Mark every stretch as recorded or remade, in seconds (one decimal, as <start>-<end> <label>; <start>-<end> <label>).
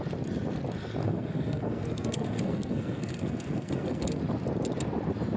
0.0-1.0 recorded; 1.0-4.2 remade; 4.2-5.4 recorded